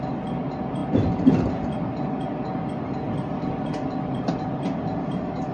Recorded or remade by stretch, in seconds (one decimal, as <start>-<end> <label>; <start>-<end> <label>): 0.0-5.5 recorded